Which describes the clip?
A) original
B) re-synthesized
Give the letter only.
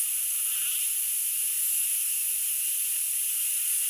A